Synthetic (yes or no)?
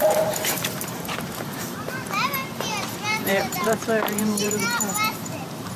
yes